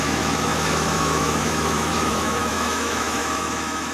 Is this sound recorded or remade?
remade